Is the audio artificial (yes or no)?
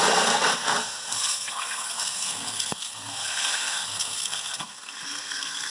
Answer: yes